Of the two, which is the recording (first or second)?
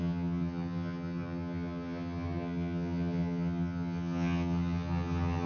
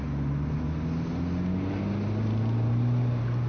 second